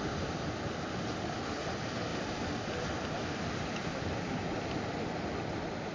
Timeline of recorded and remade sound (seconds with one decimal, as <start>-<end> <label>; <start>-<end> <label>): 0.0-5.9 recorded